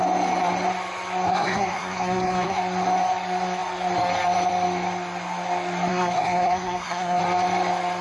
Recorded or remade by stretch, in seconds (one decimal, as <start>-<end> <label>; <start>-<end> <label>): 0.0-1.3 recorded; 1.3-2.6 remade; 2.6-5.9 recorded; 5.9-7.2 remade; 7.2-8.0 recorded